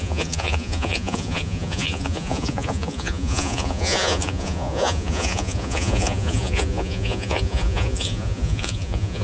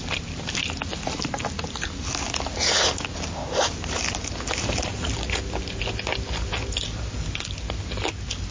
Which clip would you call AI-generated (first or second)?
first